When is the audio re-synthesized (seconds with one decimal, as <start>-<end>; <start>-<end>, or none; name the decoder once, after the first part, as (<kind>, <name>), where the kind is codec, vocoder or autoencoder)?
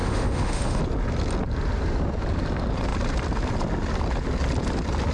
0.0-0.8 (autoencoder, DAC-VAE)